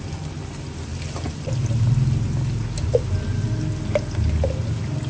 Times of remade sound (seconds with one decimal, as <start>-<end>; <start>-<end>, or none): none